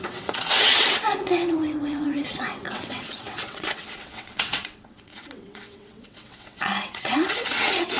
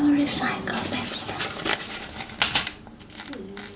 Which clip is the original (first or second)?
second